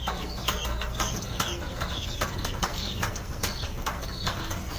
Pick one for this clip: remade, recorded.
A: remade